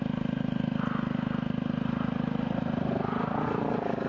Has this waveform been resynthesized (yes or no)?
no